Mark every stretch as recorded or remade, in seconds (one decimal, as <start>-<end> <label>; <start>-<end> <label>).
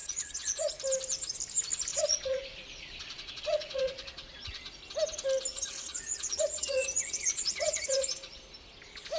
0.0-0.7 remade; 0.7-1.9 recorded; 1.9-4.8 remade; 4.8-5.5 recorded; 5.5-8.4 remade; 8.4-9.2 recorded